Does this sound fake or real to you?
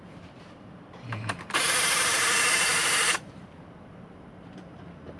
fake